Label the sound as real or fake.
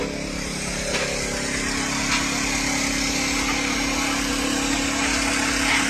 real